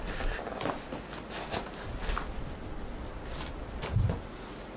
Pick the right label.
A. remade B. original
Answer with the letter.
B